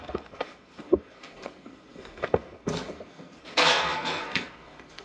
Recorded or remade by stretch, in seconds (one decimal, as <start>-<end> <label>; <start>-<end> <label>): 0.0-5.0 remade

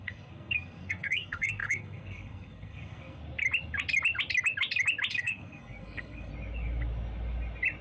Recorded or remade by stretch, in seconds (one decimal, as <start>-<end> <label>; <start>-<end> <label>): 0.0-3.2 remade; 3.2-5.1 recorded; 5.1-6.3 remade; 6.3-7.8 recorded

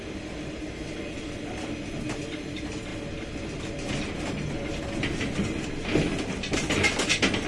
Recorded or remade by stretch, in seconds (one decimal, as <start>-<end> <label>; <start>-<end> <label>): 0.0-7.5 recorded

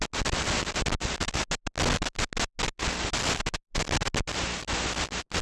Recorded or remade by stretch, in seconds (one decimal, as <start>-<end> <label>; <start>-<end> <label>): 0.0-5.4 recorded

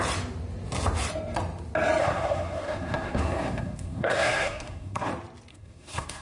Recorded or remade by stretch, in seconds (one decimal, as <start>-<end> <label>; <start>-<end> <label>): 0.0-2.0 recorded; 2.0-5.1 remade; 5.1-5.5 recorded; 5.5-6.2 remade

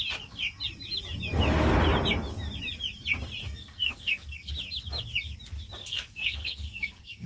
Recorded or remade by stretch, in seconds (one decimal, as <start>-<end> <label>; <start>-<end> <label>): 0.0-3.4 recorded; 3.4-4.5 remade; 4.5-5.8 recorded; 5.8-7.3 remade